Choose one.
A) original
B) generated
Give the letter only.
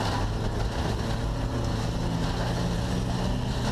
A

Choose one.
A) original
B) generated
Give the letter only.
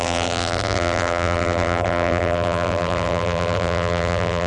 B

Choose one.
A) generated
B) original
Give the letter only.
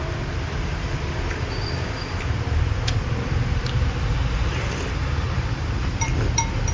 A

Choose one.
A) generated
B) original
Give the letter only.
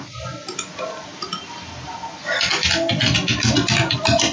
B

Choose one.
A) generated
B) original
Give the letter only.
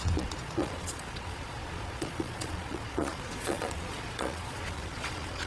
A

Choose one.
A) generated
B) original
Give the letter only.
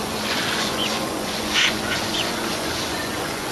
A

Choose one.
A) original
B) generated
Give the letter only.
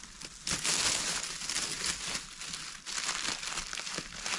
A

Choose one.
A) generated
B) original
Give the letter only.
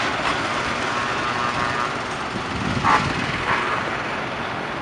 B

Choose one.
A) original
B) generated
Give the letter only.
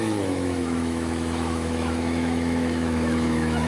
B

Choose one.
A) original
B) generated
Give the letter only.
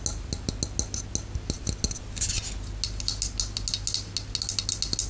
A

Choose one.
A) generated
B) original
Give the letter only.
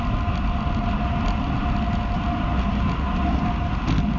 B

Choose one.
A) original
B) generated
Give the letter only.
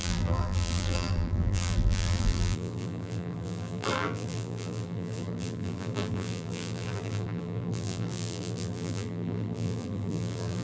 B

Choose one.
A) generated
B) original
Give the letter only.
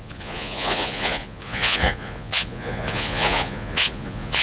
A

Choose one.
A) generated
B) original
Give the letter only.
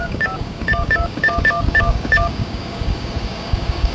A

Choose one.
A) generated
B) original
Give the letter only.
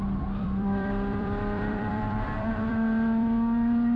A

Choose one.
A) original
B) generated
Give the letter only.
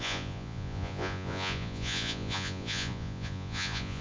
B